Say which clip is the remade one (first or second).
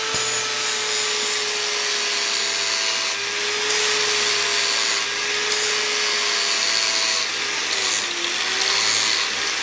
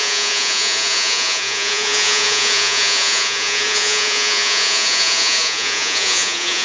second